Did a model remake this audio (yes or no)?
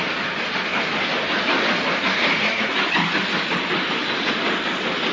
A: no